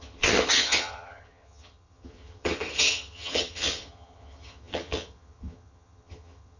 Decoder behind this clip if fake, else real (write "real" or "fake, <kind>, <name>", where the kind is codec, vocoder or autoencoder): fake, vocoder, HiFi-GAN